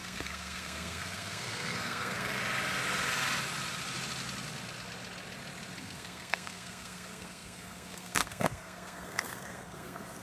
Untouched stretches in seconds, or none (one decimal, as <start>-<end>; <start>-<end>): 2.4-5.8